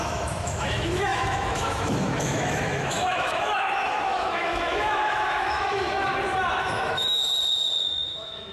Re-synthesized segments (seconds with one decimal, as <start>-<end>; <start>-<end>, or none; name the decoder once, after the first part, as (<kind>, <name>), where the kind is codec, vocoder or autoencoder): 0.0-6.1 (autoencoder, DAC-VAE); 6.6-7.2; 7.8-8.5

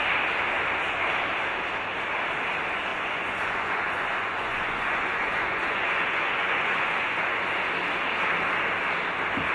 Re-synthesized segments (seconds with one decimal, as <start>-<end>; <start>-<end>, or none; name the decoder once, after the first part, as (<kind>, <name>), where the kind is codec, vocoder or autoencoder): 2.9-7.7 (vocoder, Vocos)

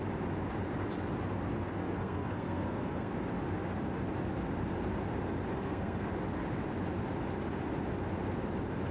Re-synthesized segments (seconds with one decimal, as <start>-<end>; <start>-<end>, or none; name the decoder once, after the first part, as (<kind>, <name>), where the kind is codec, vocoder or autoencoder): 1.7-3.1 (codec, SNAC); 5.5-6.1

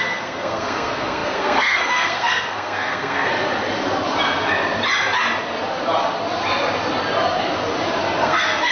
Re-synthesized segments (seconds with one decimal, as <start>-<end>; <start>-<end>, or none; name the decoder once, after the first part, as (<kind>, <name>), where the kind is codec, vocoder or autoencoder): 0.0-3.3 (codec, SNAC); 8.2-8.7

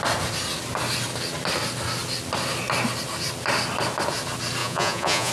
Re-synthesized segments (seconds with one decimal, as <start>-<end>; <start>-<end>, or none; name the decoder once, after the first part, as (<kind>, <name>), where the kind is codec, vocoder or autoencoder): 4.6-5.3 (vocoder, Vocos)

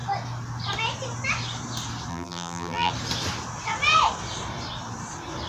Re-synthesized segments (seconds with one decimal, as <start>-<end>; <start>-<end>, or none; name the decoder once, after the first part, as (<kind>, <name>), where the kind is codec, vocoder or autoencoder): 2.1-2.9 (vocoder, BigVGAN v2)

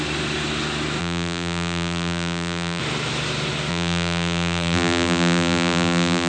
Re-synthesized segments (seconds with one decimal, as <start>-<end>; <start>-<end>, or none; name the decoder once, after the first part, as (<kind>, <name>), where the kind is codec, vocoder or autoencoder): 1.0-2.8 (vocoder, BigVGAN v2); 3.7-6.3